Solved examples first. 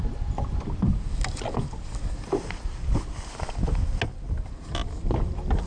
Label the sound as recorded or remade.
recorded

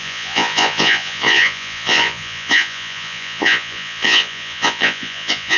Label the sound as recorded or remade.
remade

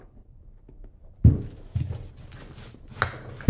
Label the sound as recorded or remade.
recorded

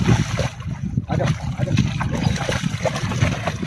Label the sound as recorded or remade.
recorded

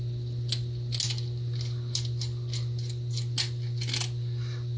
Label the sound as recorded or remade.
recorded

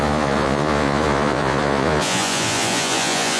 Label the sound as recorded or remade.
remade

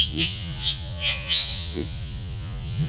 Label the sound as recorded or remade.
remade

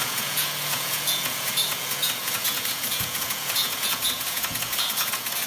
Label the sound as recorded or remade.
remade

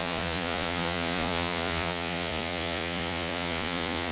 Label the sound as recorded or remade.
remade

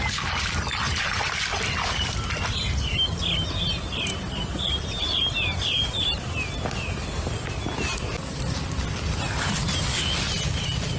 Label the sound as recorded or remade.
recorded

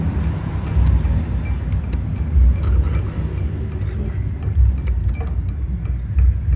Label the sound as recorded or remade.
recorded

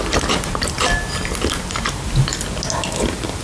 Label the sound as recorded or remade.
recorded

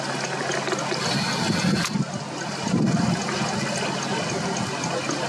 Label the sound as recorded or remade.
recorded